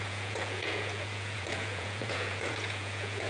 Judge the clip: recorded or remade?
remade